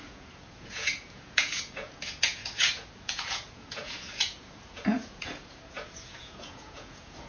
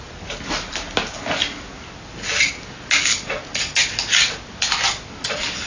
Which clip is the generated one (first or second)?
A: first